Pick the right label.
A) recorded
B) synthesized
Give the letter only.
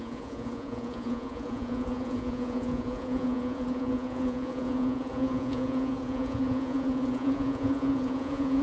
B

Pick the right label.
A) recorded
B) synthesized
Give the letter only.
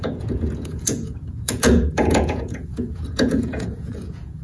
B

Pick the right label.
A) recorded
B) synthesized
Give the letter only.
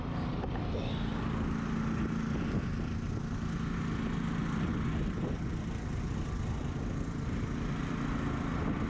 A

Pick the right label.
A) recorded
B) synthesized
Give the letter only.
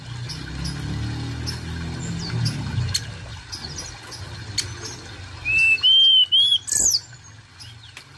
A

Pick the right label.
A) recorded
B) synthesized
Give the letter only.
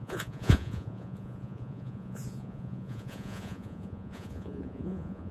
B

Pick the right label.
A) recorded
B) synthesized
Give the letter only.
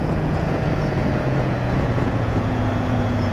B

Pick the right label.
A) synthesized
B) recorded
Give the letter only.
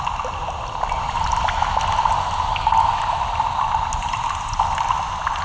B